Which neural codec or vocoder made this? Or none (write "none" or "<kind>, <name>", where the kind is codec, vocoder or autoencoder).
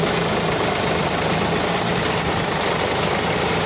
none